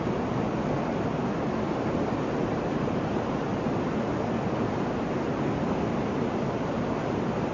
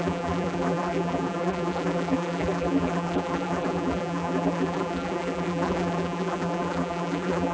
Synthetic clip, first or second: second